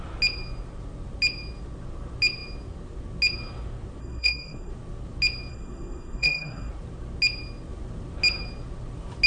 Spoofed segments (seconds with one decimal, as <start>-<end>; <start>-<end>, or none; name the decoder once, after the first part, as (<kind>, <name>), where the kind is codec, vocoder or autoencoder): 4.0-4.7 (codec, SNAC); 5.5-6.7